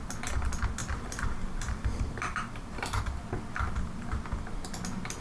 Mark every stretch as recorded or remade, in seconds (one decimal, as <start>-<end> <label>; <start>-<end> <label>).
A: 0.0-0.8 recorded; 0.8-3.0 remade; 3.0-5.2 recorded